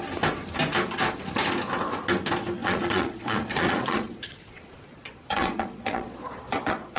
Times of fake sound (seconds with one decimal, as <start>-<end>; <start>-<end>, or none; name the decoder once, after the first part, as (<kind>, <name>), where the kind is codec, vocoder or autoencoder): 2.6-7.0 (vocoder, Vocos)